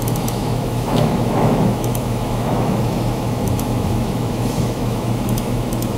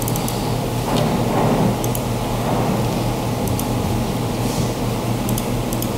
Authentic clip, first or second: second